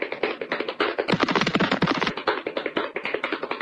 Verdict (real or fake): real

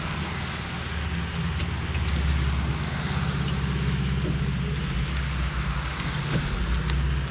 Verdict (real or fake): real